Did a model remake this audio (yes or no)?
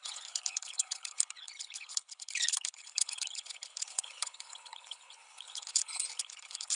yes